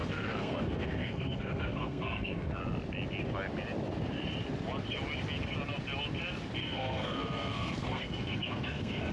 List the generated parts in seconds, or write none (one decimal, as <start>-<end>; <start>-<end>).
0.0-2.6; 6.6-9.1